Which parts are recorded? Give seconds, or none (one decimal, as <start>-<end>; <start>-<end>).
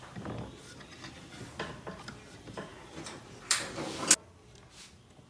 0.0-2.7; 3.2-5.3